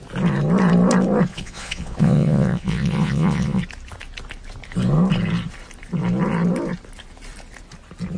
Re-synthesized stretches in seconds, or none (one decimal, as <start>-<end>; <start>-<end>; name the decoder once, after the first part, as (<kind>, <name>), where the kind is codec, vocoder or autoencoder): 1.3-3.6 (vocoder, Vocos)

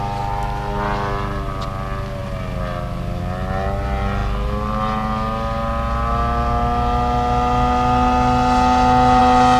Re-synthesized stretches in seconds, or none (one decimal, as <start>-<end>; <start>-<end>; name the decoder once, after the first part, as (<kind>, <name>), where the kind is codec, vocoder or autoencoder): none